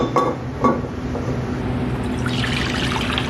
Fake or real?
real